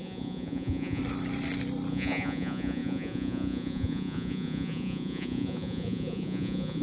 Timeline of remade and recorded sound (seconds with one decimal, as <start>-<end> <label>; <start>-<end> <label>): 0.0-1.0 remade; 1.0-1.9 recorded; 1.9-6.8 remade